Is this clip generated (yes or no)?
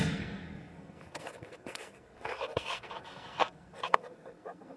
yes